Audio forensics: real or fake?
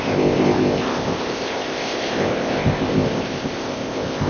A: fake